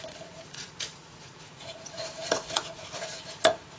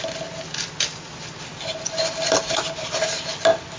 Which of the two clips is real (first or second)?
second